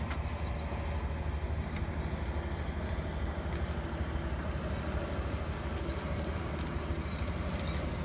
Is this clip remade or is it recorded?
recorded